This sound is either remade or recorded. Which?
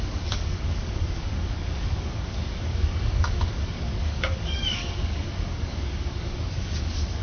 remade